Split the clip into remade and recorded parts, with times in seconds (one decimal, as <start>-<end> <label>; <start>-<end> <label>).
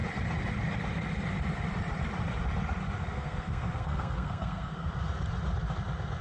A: 0.0-3.0 recorded; 3.0-4.9 remade; 4.9-6.2 recorded